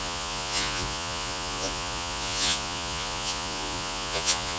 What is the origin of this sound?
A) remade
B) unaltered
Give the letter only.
A